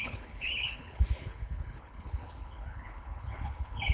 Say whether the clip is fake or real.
fake